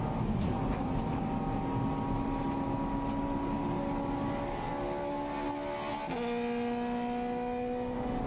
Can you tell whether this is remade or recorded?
recorded